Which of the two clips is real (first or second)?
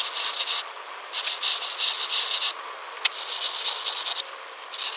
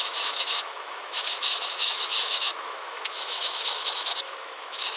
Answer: first